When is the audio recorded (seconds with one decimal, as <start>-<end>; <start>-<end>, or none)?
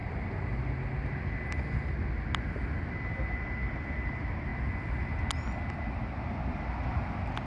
0.0-7.5